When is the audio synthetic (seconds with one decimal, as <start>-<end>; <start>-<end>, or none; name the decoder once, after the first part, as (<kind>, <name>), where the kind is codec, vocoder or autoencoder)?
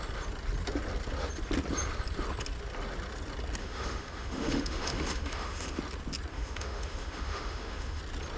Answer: 3.6-5.8 (autoencoder, DAC-VAE); 6.3-8.0